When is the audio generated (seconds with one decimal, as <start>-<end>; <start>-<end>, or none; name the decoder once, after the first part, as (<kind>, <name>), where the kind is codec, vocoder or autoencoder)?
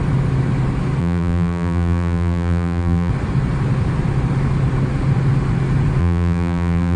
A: 1.0-3.1 (vocoder, BigVGAN v2); 6.0-7.0